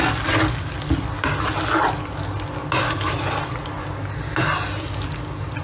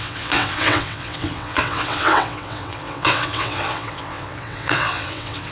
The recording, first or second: first